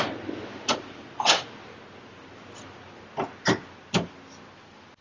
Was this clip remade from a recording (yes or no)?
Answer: no